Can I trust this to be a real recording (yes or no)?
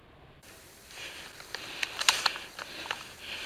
no